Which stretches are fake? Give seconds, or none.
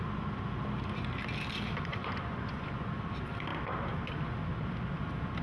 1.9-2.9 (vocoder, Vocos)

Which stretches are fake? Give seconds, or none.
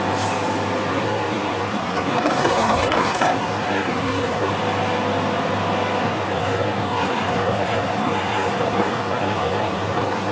0.9-4.5 (codec, SNAC); 6.0-10.3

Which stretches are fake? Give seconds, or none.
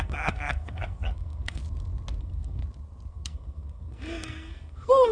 0.0-1.6 (codec, SNAC); 2.2-2.6; 3.1-5.1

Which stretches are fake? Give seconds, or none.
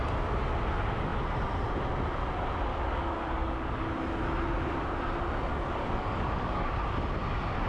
2.7-3.9 (codec, DAC); 5.5-6.8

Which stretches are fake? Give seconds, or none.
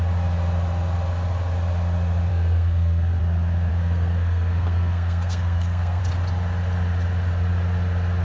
2.3-3.2 (codec, SNAC); 3.7-6.0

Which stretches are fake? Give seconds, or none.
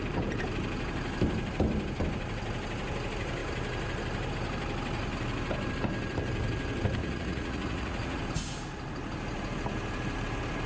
7.0-8.2 (vocoder, Vocos)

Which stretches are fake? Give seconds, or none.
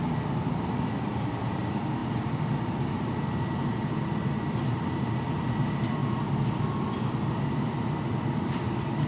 1.1-1.6 (vocoder, BigVGAN v2)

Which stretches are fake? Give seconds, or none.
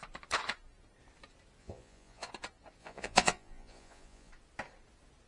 1.6-2.3 (vocoder, Vocos); 2.8-4.3